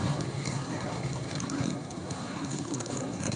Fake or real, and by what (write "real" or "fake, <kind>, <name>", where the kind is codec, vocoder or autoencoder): fake, codec, SNAC